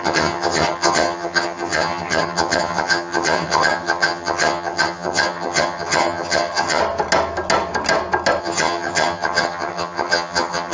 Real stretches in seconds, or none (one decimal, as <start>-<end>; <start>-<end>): 6.8-8.4